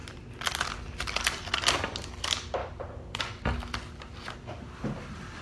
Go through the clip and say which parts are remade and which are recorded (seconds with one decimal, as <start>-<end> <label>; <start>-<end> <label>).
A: 0.0-2.6 recorded; 2.6-3.2 remade; 3.2-5.4 recorded